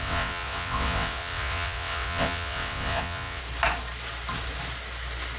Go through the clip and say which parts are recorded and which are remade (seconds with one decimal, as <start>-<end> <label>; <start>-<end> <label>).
0.0-3.4 remade; 3.4-5.4 recorded